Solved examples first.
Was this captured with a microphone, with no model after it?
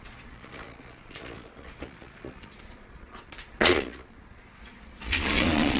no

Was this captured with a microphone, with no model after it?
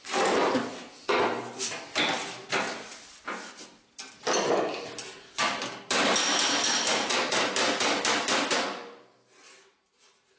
yes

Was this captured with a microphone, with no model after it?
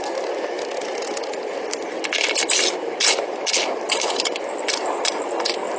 yes